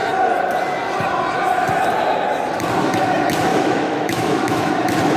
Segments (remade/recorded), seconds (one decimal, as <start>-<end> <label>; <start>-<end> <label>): 0.0-3.5 recorded; 3.5-4.7 remade; 4.7-5.2 recorded